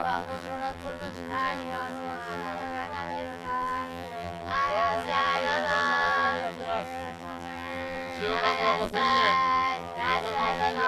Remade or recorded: remade